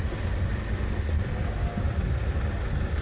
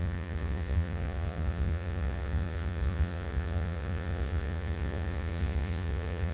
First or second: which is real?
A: first